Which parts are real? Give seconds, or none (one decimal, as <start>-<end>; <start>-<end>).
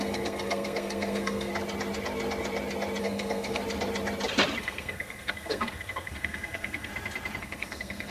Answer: 1.5-3.0; 3.6-4.6; 6.9-7.4